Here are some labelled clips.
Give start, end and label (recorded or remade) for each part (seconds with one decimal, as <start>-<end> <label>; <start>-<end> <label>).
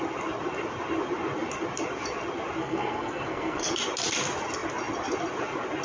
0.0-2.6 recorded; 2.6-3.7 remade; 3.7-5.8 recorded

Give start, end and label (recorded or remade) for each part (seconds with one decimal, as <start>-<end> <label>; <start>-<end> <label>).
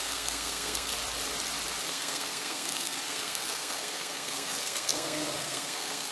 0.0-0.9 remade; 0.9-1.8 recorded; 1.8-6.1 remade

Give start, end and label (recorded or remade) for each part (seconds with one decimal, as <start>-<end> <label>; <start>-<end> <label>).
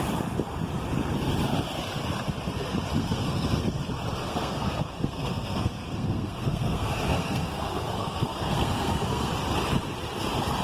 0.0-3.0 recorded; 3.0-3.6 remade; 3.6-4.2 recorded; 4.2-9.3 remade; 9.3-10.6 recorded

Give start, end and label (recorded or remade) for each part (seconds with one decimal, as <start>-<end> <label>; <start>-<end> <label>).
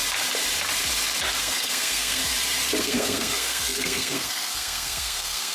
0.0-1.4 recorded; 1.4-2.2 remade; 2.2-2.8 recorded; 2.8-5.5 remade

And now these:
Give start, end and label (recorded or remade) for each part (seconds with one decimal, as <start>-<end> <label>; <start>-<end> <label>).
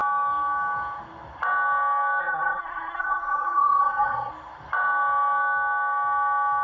0.0-2.2 recorded; 2.2-4.3 remade; 4.3-6.6 recorded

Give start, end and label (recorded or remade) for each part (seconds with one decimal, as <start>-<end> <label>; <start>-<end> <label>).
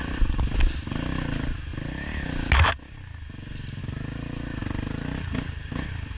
0.0-6.2 recorded